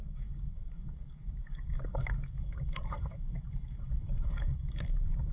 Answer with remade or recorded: remade